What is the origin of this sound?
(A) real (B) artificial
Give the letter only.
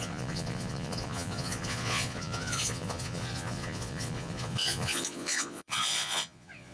B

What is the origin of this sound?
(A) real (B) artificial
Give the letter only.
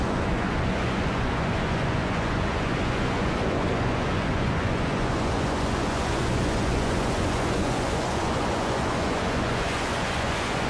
B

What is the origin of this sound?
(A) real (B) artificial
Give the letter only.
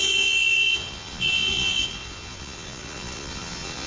B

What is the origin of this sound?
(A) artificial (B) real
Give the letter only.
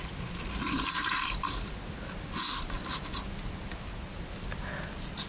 B